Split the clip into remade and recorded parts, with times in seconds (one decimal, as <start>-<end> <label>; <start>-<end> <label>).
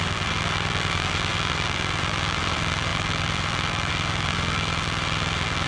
0.0-5.7 remade